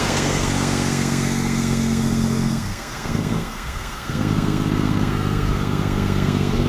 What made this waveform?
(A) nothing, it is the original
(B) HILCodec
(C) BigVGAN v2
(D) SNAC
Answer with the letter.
D